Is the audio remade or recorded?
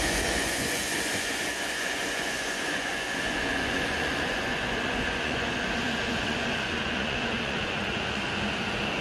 remade